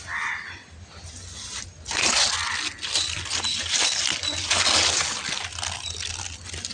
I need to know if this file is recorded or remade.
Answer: recorded